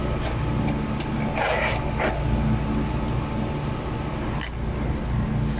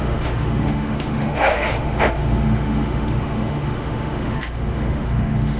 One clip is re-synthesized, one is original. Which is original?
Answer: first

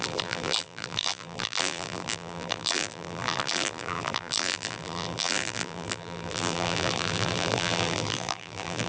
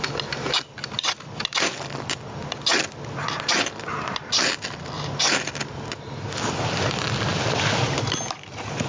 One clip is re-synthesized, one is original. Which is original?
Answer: second